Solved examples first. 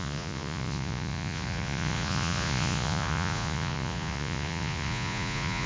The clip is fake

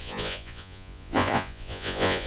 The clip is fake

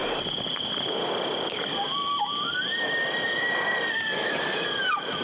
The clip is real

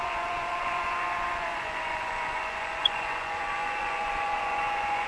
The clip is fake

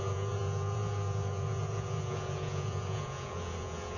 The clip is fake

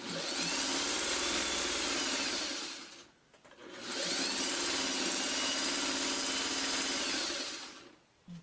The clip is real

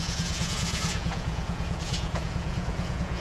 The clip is fake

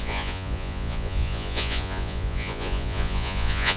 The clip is fake